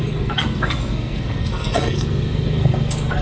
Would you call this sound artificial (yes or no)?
yes